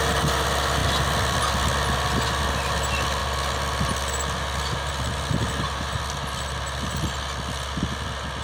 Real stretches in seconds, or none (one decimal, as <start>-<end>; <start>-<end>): 0.0-8.4